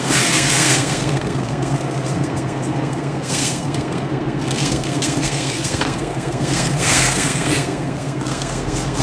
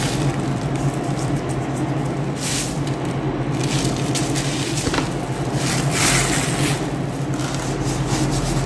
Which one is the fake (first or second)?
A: first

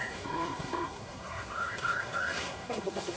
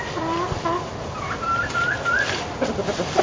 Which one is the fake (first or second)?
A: first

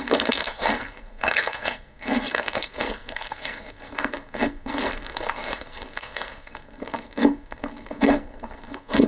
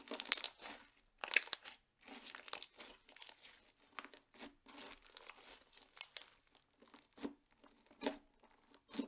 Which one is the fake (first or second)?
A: first